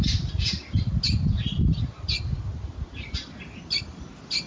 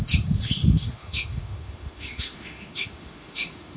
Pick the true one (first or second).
first